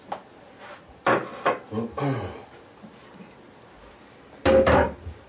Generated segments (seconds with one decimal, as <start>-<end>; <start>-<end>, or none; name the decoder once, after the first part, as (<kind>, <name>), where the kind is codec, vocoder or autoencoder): none